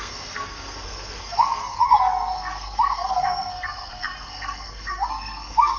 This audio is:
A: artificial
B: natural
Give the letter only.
A